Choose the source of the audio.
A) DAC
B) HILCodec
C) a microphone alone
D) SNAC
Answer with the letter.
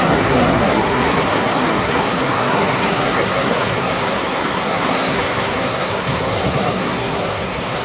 D